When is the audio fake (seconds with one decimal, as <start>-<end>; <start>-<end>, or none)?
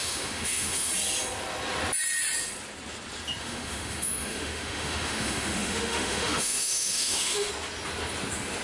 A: 0.0-0.9; 3.4-7.5